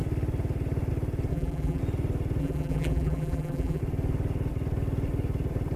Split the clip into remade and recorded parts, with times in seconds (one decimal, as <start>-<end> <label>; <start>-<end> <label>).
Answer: 0.0-1.3 recorded; 1.3-1.8 remade; 1.8-2.4 recorded; 2.4-3.8 remade; 3.8-5.8 recorded